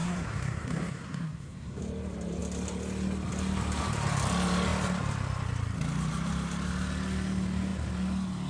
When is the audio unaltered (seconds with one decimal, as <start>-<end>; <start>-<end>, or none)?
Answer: 1.8-8.5